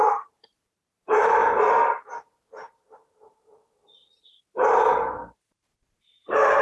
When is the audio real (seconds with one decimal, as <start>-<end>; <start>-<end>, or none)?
1.4-4.9